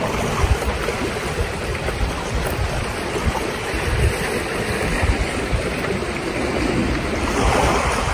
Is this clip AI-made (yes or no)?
yes